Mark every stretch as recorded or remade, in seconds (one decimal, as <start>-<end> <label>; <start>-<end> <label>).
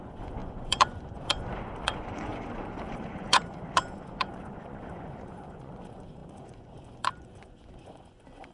0.0-8.5 remade